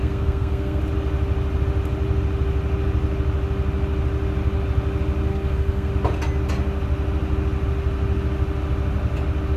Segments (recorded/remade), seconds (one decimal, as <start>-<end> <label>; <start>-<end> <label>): 0.0-0.8 remade; 0.8-5.3 recorded; 5.3-5.9 remade; 5.9-9.6 recorded